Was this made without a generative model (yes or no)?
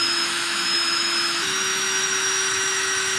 no